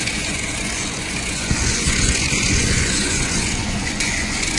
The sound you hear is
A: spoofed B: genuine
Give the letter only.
A